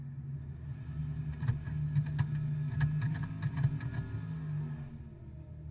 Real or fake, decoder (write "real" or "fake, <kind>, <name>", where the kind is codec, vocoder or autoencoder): real